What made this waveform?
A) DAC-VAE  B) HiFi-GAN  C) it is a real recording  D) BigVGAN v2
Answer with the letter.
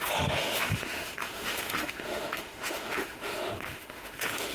A